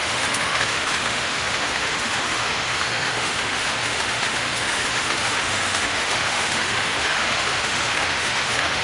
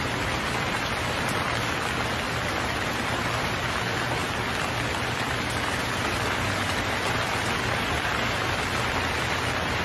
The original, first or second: second